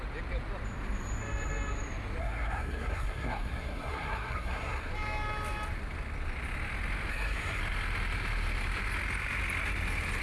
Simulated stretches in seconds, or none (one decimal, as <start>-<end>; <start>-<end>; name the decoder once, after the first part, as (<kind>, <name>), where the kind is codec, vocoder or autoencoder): 2.2-4.9 (codec, SNAC); 7.1-7.6